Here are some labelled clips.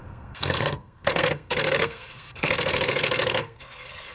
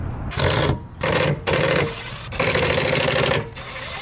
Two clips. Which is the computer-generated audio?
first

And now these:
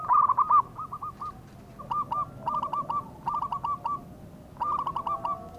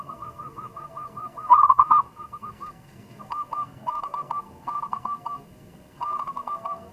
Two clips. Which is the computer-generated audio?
second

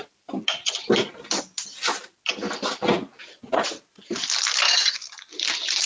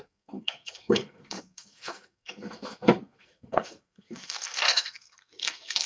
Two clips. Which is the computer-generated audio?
second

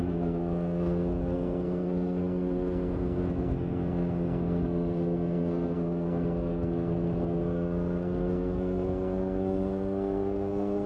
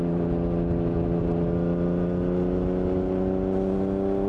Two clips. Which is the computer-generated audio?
first